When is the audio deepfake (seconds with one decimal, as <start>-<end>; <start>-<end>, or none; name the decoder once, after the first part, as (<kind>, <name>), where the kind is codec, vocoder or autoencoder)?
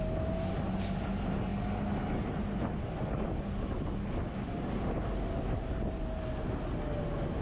none